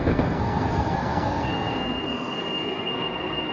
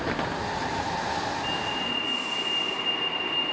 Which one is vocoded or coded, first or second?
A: first